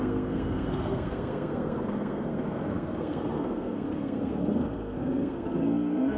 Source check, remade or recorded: remade